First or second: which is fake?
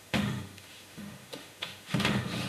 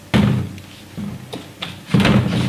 first